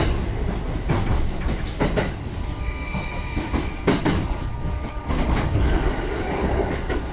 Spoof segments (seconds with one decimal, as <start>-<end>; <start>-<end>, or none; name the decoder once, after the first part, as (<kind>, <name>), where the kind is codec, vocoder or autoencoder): 4.0-7.1 (codec, DAC)